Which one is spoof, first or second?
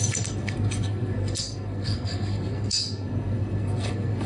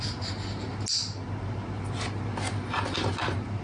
first